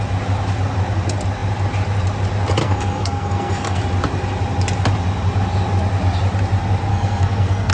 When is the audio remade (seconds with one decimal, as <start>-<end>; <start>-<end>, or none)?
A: 2.6-3.8; 6.9-7.7